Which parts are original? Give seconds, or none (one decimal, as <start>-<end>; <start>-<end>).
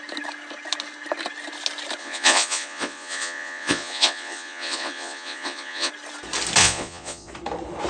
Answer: 0.0-2.0; 5.9-6.6; 7.3-7.9